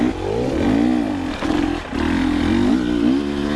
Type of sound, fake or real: real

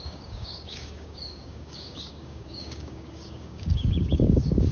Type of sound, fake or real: fake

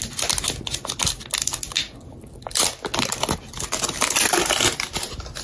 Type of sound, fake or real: real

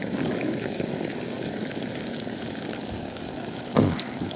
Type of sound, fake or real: fake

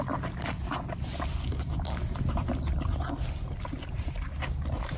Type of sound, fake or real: real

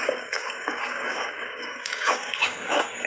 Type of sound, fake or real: fake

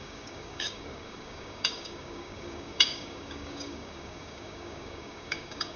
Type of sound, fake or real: fake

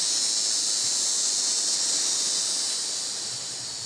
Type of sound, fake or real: real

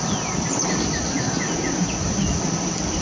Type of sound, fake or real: real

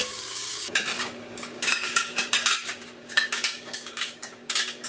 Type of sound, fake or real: fake